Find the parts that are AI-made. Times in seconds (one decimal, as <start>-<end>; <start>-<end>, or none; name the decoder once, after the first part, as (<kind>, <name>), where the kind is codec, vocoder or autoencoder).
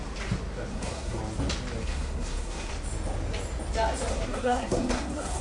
0.7-1.2 (codec, SNAC); 1.8-2.7; 4.1-5.4